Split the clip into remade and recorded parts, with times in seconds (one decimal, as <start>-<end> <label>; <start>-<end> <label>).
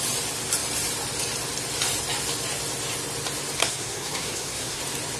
0.0-3.6 recorded; 3.6-4.8 remade; 4.8-5.2 recorded